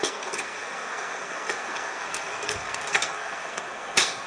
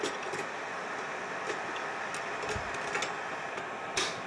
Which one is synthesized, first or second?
first